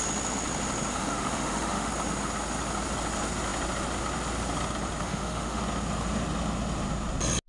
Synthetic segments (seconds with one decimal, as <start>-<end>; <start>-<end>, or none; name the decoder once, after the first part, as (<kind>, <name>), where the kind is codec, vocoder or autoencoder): 0.9-1.9 (autoencoder, DAC-VAE); 5.0-5.6